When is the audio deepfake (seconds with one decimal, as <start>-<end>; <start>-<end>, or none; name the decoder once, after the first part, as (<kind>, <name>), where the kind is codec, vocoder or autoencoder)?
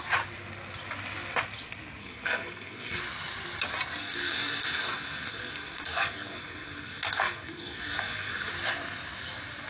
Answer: 2.0-3.0 (codec, SNAC); 4.0-8.5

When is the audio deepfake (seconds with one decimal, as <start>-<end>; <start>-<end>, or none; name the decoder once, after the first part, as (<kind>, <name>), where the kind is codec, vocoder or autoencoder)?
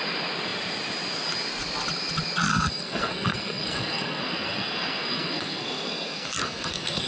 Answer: 2.5-7.1 (codec, SNAC)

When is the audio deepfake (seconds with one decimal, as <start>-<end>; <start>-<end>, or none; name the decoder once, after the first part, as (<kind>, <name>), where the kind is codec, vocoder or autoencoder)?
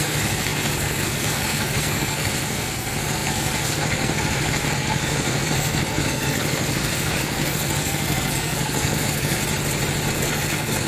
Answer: 0.0-9.4 (codec, SNAC); 10.1-10.9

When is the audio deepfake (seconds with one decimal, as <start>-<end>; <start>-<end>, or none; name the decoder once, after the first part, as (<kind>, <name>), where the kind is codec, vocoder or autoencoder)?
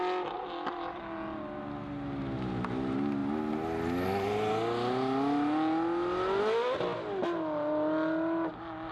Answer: none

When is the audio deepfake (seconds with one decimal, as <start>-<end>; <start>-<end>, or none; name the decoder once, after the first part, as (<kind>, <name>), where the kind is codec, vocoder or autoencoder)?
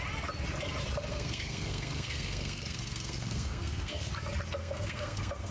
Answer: 1.1-4.1 (codec, SNAC); 4.6-5.5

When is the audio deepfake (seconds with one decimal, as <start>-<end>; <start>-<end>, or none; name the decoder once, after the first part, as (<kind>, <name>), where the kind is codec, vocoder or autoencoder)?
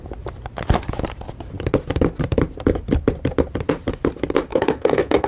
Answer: 4.5-5.3 (codec, SNAC)